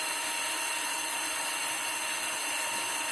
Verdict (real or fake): real